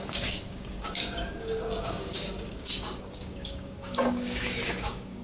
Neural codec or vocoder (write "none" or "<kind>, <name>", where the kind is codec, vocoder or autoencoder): codec, DAC